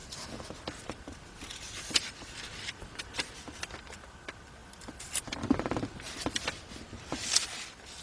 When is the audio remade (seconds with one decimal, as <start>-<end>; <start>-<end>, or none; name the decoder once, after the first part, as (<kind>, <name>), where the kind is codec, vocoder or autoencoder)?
0.0-3.0 (vocoder, BigVGAN v2); 4.6-5.2